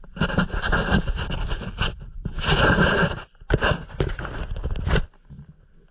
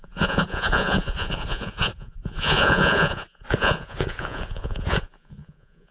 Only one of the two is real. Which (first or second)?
first